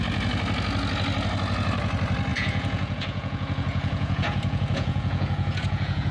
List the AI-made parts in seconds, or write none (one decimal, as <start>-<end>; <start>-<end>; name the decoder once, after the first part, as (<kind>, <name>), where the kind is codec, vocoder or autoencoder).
2.3-6.1 (vocoder, Vocos)